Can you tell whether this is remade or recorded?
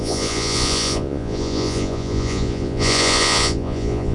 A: remade